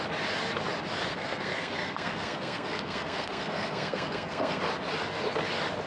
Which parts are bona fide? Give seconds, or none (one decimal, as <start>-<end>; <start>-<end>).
0.0-1.1; 4.6-5.9